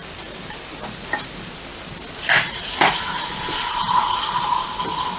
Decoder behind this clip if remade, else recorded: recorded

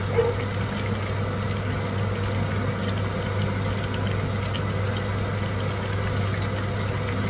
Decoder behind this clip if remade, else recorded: recorded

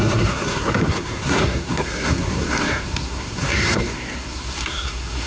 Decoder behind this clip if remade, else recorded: remade, codec, SNAC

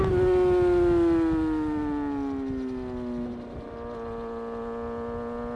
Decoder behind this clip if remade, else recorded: recorded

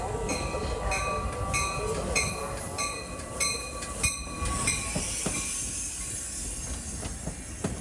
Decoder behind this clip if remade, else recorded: recorded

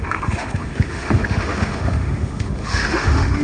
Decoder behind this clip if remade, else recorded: remade, autoencoder, DAC-VAE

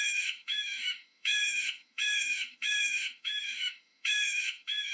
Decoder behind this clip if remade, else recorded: remade, autoencoder, DAC-VAE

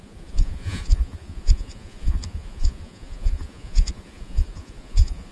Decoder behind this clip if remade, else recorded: remade, vocoder, Vocos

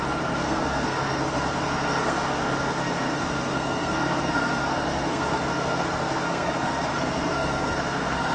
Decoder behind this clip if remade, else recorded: remade, codec, SNAC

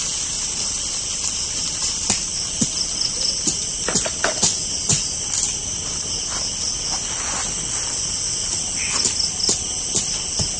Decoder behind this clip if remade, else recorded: recorded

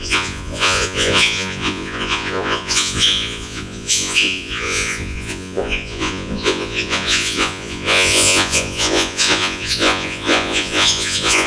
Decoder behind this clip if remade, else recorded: remade, vocoder, Vocos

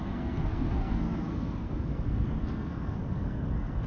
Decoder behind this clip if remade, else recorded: remade, codec, SNAC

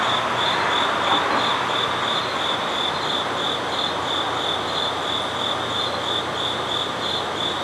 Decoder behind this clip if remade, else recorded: recorded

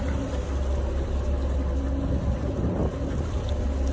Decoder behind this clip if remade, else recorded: recorded